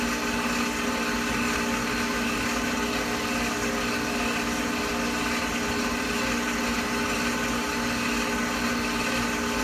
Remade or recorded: recorded